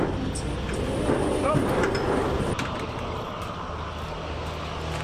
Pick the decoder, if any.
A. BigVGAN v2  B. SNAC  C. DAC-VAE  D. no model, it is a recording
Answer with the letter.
D